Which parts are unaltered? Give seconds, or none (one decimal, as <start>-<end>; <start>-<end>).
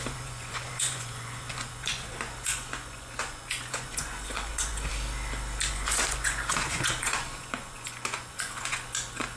4.9-5.7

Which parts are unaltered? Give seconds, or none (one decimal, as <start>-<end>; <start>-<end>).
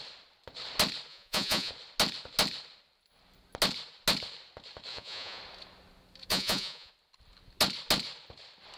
0.0-1.1; 1.7-4.9; 5.4-6.3; 6.9-8.8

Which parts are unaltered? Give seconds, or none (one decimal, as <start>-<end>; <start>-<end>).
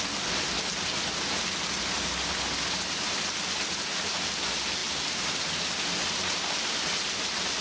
0.0-7.6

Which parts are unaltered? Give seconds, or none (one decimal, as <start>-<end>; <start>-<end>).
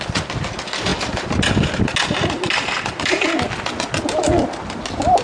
0.0-5.2